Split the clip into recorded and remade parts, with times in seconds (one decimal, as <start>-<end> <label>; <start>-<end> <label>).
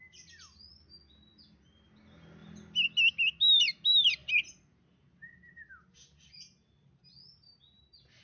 0.0-8.2 recorded